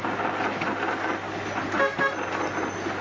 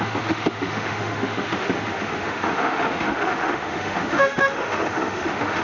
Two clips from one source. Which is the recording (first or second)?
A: first